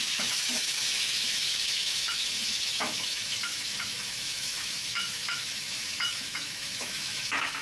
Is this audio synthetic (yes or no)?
yes